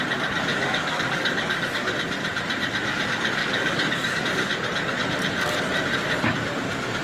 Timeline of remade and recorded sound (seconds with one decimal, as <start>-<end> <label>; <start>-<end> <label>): 0.0-0.5 recorded; 0.5-1.9 remade; 1.9-3.4 recorded; 3.4-4.2 remade; 4.2-7.0 recorded